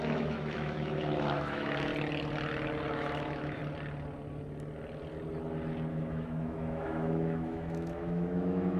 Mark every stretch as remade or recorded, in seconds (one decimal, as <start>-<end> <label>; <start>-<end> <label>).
0.0-1.9 remade; 1.9-2.9 recorded; 2.9-3.6 remade; 3.6-5.9 recorded; 5.9-8.8 remade